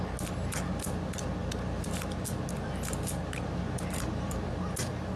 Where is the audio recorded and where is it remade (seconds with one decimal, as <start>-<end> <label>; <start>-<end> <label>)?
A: 0.0-5.2 recorded